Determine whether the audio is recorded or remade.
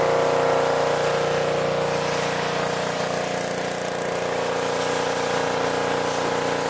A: recorded